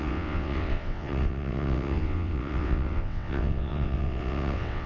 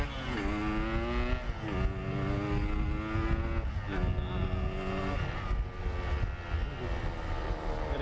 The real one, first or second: second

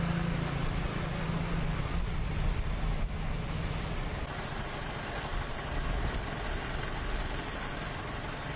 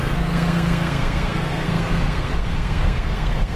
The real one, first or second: first